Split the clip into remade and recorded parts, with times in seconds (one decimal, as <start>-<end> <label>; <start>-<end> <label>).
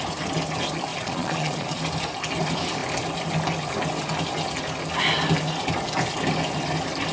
0.0-0.9 recorded; 0.9-1.8 remade; 1.8-7.1 recorded